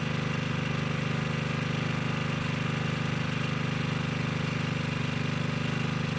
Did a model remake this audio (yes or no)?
no